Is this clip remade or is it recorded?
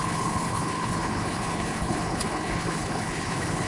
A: remade